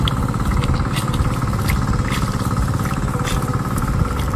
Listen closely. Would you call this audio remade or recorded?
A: recorded